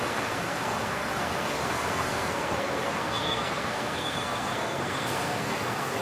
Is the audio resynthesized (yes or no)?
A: yes